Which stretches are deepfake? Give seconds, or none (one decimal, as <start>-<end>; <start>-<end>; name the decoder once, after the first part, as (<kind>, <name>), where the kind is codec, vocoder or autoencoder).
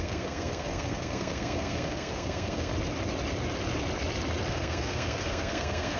0.0-2.7 (codec, SNAC); 4.5-6.0